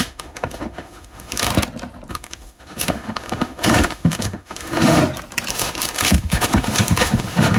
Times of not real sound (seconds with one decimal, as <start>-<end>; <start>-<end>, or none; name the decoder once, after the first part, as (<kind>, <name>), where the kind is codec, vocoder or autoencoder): 0.0-1.5 (autoencoder, DAC-VAE); 2.1-5.0; 5.5-7.6